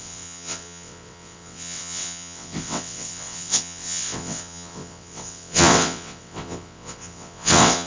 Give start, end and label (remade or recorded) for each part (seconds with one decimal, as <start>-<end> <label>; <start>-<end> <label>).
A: 0.0-7.9 remade